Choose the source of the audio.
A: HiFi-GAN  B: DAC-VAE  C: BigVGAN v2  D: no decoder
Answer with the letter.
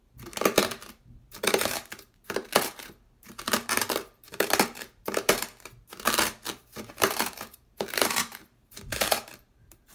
C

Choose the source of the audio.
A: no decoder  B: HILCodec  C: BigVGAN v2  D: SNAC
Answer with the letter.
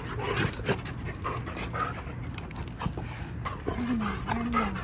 A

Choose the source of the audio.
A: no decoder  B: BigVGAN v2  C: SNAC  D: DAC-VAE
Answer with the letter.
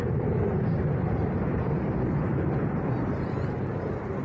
B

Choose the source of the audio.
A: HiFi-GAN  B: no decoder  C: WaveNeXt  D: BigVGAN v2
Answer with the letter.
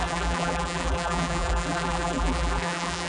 D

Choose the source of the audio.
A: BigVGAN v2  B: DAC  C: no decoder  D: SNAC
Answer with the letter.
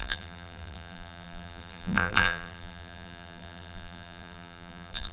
A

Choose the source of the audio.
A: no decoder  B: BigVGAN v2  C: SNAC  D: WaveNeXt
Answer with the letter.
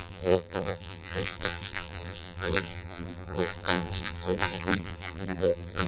B